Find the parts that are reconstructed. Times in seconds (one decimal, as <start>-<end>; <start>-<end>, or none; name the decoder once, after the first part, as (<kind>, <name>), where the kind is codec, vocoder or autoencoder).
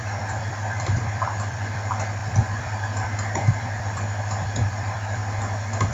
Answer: 0.0-5.2 (vocoder, BigVGAN v2)